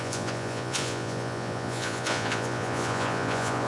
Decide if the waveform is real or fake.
fake